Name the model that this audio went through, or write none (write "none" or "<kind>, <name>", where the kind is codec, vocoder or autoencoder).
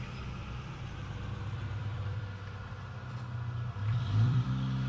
vocoder, BigVGAN v2